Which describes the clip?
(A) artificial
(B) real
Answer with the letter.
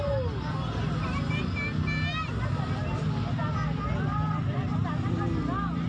B